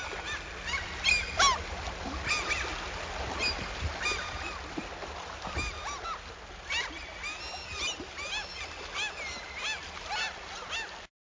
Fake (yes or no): no